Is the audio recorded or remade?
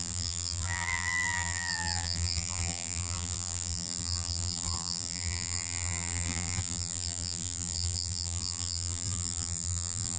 remade